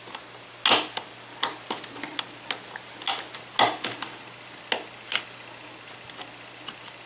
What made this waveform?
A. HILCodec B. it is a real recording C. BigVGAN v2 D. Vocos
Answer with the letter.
B